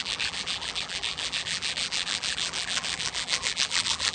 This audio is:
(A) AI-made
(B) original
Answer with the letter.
A